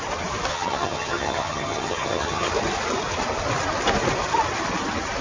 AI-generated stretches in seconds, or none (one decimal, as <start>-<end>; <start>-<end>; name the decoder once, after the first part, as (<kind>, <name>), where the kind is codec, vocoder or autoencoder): 0.5-2.5 (vocoder, HiFi-GAN)